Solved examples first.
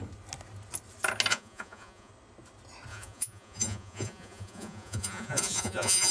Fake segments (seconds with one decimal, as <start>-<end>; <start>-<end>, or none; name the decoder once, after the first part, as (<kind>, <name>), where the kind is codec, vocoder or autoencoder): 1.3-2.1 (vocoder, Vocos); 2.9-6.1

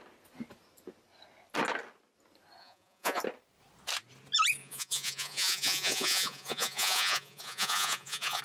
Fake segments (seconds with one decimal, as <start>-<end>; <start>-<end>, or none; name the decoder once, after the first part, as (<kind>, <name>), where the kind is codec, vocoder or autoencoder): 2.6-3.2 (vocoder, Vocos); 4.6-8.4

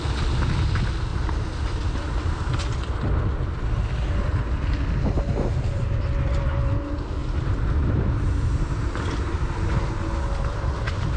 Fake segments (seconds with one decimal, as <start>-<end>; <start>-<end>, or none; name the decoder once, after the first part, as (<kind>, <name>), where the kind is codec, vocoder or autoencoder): none

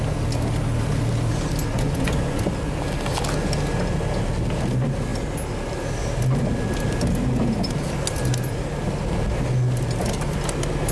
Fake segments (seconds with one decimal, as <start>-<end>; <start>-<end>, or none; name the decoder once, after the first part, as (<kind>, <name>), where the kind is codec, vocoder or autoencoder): 1.7-2.5 (vocoder, Vocos)

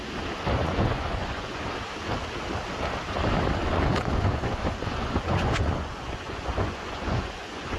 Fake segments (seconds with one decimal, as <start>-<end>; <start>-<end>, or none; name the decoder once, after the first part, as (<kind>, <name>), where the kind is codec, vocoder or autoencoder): 0.6-1.6 (vocoder, Vocos); 3.6-7.8

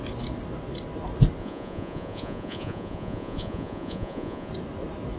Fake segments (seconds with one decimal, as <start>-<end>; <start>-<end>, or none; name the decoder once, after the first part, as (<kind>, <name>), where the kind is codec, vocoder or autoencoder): 1.4-4.5 (vocoder, Vocos)

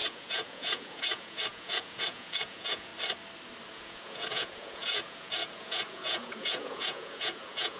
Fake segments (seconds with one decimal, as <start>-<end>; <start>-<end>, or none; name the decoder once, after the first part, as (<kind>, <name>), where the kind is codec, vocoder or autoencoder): 0.0-2.9 (vocoder, Vocos); 3.7-7.8